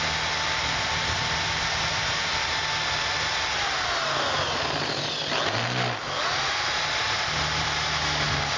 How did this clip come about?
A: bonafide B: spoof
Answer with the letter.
A